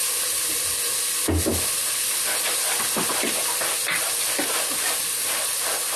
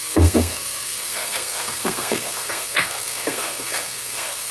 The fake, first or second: second